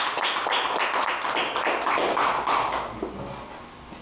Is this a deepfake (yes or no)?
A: no